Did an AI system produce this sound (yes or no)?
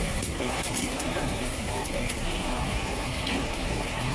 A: yes